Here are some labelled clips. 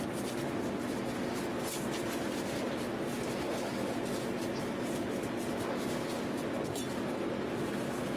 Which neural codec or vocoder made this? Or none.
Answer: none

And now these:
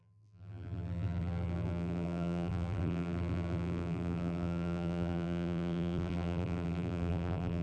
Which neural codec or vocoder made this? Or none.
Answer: vocoder, BigVGAN v2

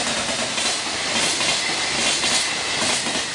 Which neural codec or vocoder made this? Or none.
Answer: none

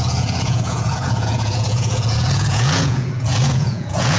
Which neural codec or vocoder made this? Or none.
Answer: vocoder, Vocos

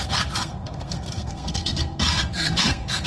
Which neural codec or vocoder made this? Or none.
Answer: codec, SNAC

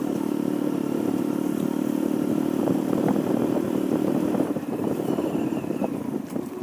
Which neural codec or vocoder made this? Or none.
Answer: vocoder, BigVGAN v2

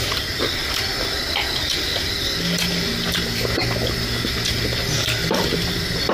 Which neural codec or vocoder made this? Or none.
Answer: none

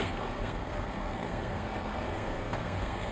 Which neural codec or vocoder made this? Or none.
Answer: codec, SNAC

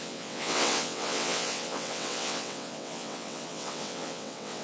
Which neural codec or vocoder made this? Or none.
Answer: vocoder, WaveNeXt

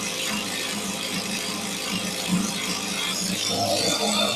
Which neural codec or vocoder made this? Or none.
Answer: vocoder, BigVGAN v2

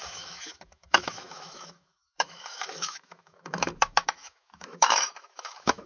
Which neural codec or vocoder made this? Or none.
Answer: autoencoder, DAC-VAE